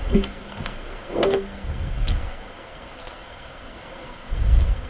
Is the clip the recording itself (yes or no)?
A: no